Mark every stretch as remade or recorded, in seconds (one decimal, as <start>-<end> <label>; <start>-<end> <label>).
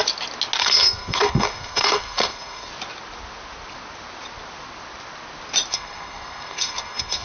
0.0-0.6 recorded; 0.6-2.7 remade; 2.7-5.7 recorded; 5.7-7.2 remade